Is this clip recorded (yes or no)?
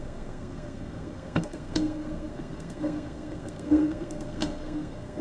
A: no